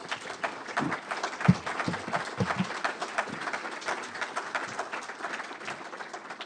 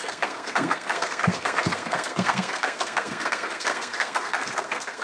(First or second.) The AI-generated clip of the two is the second